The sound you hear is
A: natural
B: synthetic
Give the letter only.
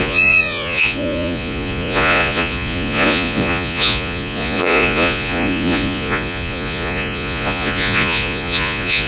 B